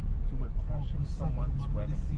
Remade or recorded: recorded